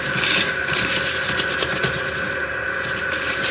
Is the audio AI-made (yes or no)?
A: yes